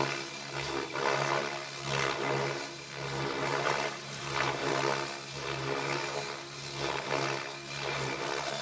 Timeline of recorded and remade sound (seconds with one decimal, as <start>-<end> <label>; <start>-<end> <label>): 0.0-3.5 recorded; 3.5-4.7 remade; 4.7-8.6 recorded